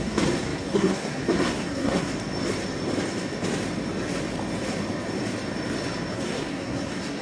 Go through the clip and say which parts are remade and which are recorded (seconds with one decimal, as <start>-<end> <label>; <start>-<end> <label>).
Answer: 0.0-2.1 remade; 2.1-6.1 recorded; 6.1-7.2 remade